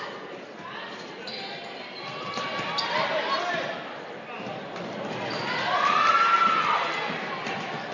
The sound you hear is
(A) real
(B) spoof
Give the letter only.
A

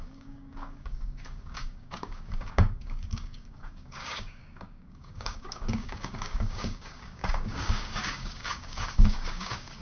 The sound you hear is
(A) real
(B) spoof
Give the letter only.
B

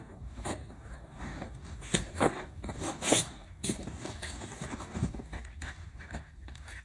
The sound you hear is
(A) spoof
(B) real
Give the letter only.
A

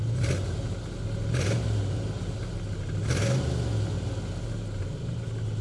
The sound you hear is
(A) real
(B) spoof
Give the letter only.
A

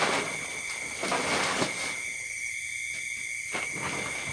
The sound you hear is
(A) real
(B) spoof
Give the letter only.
A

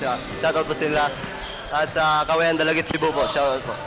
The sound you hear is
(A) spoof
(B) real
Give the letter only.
B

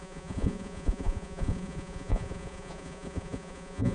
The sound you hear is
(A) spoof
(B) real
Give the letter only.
A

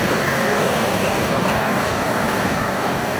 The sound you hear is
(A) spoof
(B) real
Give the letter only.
A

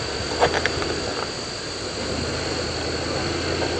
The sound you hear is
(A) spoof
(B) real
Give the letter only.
B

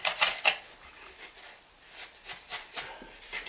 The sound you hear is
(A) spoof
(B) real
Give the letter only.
B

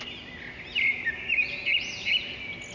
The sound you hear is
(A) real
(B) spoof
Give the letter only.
A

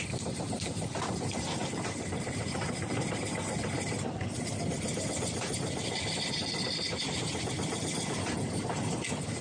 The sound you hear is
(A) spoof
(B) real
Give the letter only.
B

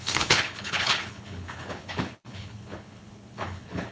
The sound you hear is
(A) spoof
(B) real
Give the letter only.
A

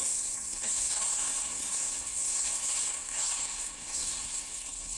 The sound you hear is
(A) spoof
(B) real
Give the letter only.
A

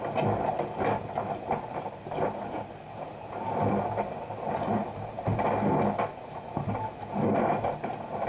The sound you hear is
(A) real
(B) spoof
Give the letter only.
A